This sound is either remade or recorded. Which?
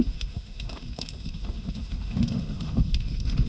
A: remade